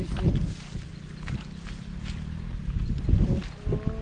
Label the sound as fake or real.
real